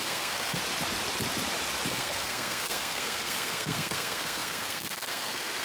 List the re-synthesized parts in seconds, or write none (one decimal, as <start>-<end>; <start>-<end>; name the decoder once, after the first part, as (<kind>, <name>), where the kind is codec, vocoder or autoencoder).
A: 0.0-0.6 (codec, SNAC); 1.9-5.6